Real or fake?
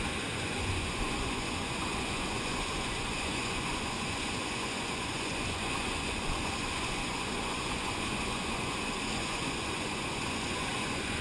fake